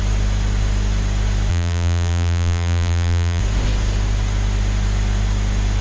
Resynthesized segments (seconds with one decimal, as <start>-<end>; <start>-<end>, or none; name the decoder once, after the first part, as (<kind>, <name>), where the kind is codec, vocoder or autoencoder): 1.5-3.4 (vocoder, BigVGAN v2)